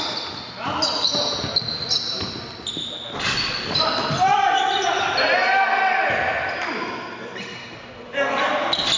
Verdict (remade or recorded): recorded